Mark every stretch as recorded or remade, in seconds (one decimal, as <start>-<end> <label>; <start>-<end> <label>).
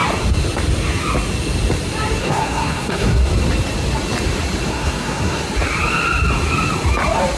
0.0-2.2 recorded; 2.2-3.3 remade; 3.3-4.7 recorded; 4.7-5.4 remade; 5.4-7.4 recorded